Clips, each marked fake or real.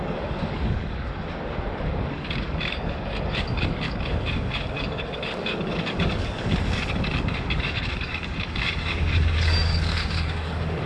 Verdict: fake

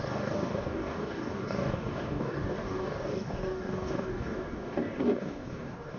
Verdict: fake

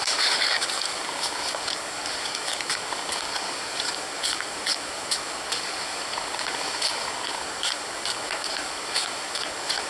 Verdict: fake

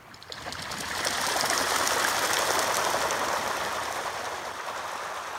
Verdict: real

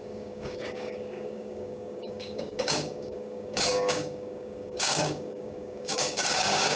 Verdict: fake